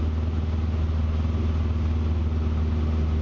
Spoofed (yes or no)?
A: no